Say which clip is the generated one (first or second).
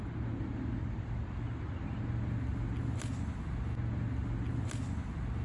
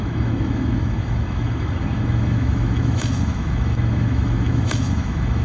second